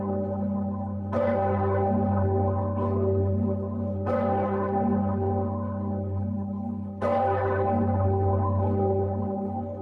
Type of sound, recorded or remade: remade